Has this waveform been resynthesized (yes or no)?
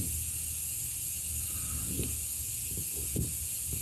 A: no